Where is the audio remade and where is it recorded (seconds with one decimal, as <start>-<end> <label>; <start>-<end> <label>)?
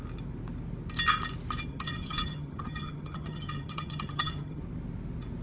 0.0-1.7 recorded; 1.7-4.6 remade; 4.6-5.4 recorded